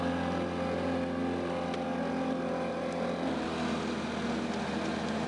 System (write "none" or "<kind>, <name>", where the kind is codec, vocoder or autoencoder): none